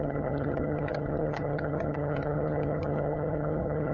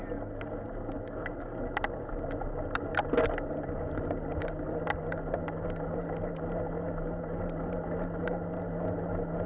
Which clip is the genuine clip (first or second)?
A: second